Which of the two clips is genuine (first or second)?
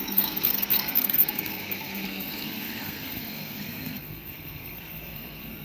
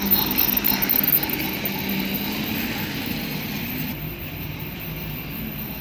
second